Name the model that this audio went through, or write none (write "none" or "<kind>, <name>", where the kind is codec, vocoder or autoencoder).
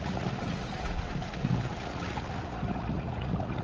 vocoder, Vocos